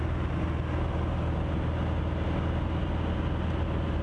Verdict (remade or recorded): recorded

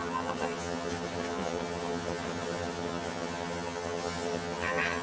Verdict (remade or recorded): remade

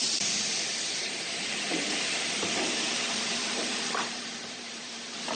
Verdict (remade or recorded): remade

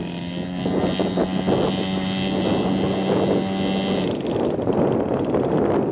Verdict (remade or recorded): recorded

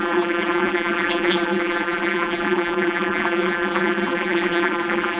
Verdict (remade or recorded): remade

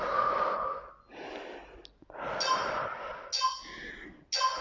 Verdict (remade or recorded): recorded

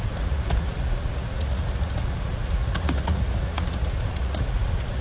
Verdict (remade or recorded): remade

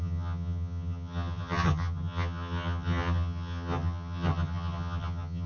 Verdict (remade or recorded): remade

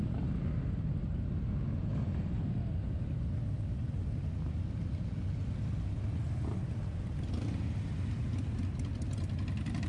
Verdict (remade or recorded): recorded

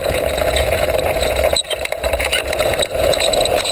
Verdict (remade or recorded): remade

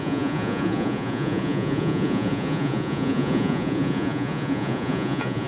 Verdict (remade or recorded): remade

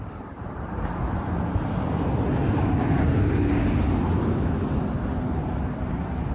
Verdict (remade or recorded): recorded